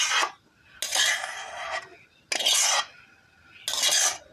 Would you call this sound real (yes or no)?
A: yes